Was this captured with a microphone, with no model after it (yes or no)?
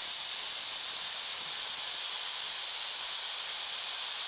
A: yes